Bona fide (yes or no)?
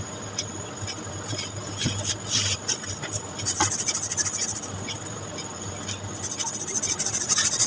yes